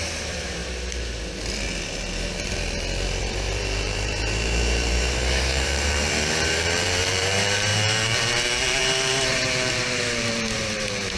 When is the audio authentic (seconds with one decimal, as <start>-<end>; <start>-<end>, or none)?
0.6-3.2